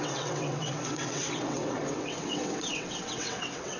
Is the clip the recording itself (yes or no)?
no